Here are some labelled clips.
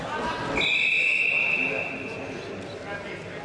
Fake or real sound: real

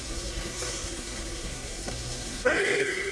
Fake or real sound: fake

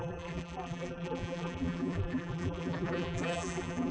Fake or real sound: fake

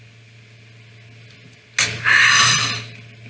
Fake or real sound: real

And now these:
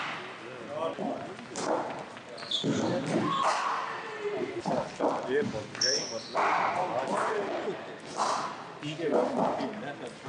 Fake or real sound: real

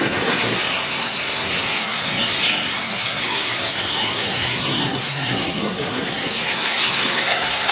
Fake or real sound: fake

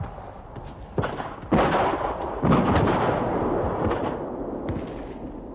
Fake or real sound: real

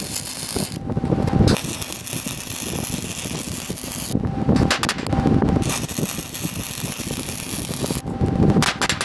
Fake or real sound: real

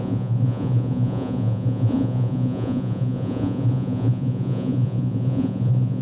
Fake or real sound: fake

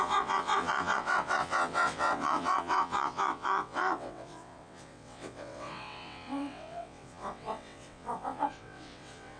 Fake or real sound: fake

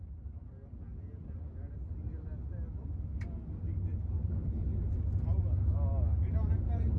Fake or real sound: real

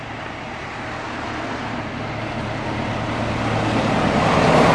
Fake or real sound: real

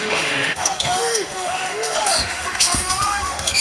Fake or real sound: fake